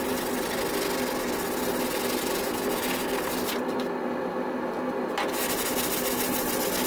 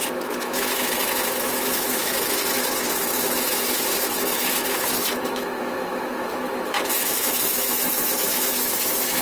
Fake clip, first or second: second